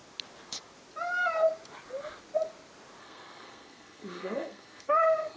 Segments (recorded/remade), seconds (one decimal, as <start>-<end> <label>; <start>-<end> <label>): 0.0-3.0 recorded; 3.0-5.4 remade